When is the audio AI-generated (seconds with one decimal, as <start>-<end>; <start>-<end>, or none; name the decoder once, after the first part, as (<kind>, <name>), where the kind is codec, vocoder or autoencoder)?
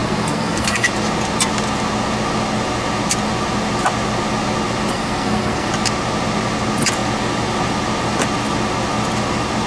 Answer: 0.0-0.9 (codec, SNAC); 4.9-5.7